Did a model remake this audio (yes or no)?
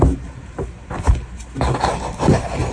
no